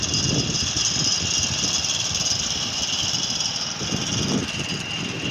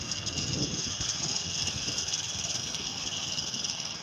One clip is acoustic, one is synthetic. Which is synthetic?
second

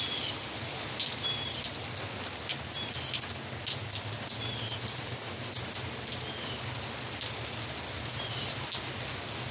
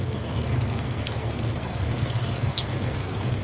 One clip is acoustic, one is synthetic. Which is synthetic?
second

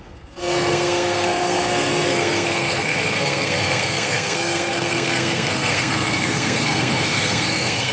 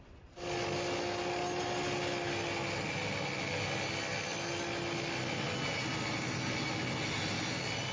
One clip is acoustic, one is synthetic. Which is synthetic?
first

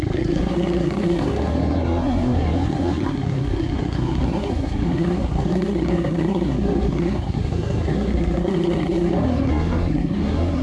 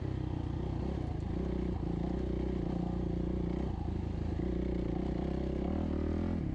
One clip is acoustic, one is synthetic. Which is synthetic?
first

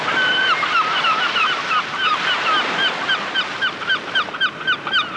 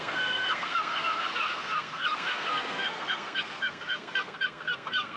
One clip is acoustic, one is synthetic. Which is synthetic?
second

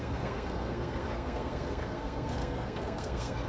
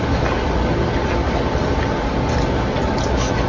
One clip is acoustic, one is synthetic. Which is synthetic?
first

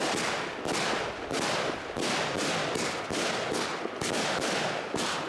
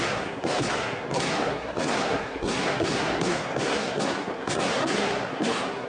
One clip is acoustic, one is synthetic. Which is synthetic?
second